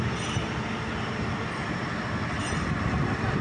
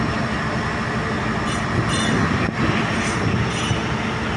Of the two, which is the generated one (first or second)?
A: first